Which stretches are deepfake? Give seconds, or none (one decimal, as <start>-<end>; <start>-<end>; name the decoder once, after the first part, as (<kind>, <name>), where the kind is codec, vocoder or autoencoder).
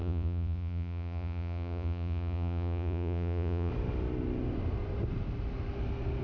0.0-3.7 (vocoder, Vocos)